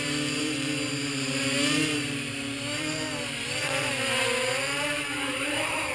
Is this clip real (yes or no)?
no